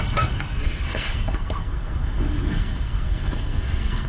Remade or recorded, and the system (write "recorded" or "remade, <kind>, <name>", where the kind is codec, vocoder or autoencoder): remade, codec, SNAC